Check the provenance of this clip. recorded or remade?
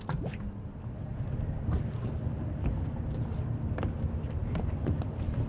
recorded